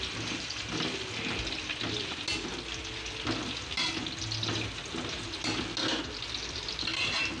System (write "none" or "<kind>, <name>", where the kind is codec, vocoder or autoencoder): none